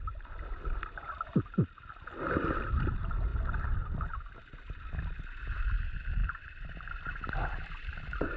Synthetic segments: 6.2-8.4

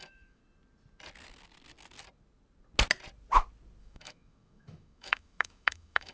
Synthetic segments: 0.0-0.4; 3.8-6.1

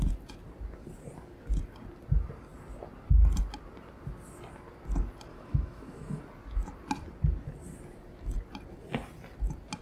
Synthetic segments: 5.3-6.2

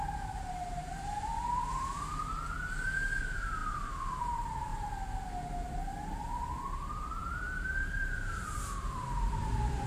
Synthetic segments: 0.0-1.3; 3.2-4.7; 6.6-9.9

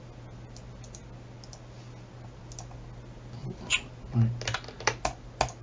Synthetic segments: none

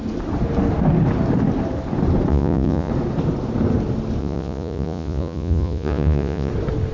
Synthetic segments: 2.3-2.9; 4.2-6.5

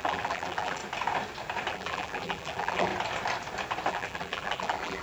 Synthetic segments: 0.0-0.8; 1.7-2.9; 3.9-5.0

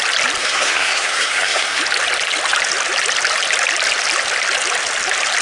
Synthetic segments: 0.4-1.8